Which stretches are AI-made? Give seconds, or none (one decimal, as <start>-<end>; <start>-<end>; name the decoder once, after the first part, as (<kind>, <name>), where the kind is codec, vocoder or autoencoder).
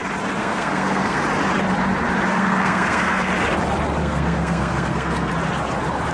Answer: 0.4-1.2 (codec, SNAC); 2.3-3.3; 4.0-5.3